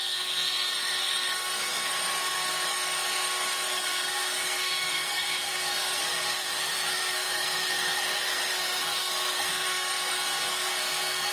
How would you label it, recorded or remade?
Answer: remade